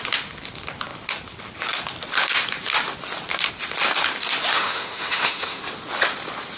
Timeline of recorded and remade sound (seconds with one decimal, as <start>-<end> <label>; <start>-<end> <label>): 0.0-4.5 recorded; 4.5-5.6 remade; 5.6-6.6 recorded